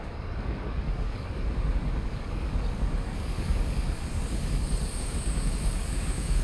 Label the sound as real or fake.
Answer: fake